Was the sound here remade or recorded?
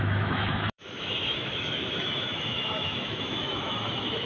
remade